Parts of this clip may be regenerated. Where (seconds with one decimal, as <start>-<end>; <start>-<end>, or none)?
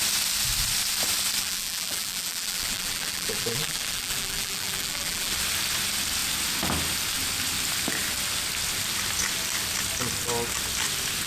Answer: 1.4-5.3